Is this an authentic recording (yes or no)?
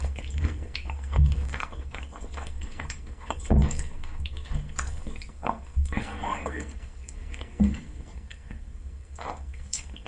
no